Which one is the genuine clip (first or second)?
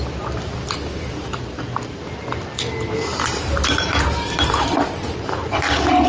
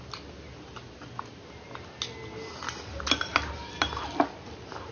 second